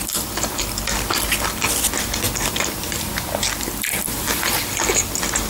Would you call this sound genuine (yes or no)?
yes